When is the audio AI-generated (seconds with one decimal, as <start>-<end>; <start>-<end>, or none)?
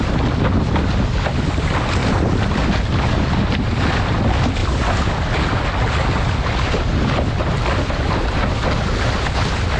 none